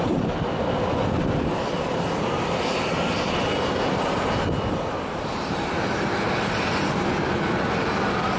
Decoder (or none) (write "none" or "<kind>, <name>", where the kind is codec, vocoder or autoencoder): none